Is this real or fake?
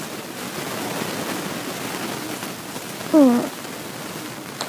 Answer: real